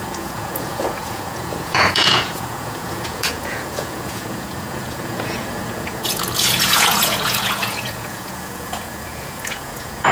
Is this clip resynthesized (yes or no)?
yes